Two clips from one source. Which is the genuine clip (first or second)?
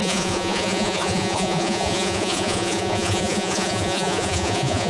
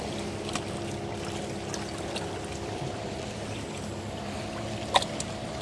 second